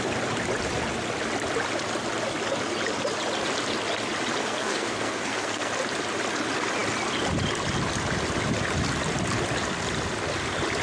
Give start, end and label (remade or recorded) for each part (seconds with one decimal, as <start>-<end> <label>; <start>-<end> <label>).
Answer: 0.0-4.4 recorded; 4.4-5.7 remade; 5.7-10.8 recorded